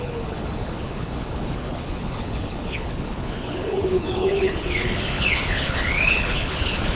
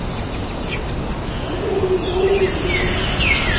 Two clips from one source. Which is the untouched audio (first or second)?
second